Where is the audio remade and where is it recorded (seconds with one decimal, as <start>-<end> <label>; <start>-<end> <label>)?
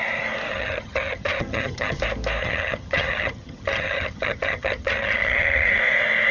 0.0-0.5 recorded; 0.5-2.0 remade; 2.0-2.4 recorded; 2.4-5.8 remade; 5.8-6.3 recorded